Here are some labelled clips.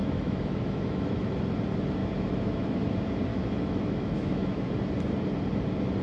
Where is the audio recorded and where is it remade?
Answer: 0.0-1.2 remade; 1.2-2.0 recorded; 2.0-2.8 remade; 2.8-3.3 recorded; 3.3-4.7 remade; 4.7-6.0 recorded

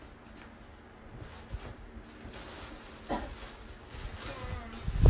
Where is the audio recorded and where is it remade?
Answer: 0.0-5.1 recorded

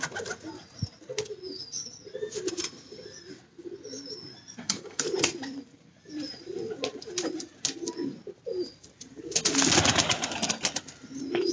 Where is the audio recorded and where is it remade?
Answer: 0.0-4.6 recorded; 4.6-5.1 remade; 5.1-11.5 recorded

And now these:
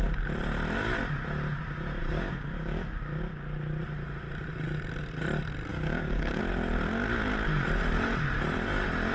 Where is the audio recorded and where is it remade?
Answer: 0.0-2.0 recorded; 2.0-3.2 remade; 3.2-5.7 recorded; 5.7-6.4 remade; 6.4-9.1 recorded